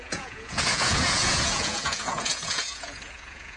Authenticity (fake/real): fake